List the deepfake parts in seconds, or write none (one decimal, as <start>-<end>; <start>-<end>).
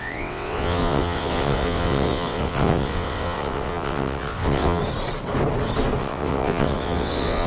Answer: 0.0-4.8; 6.0-7.5